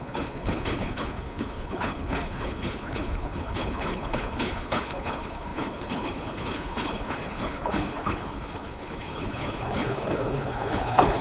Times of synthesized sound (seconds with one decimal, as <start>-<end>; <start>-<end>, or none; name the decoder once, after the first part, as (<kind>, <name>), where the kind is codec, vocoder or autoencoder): 0.0-11.2 (codec, HILCodec)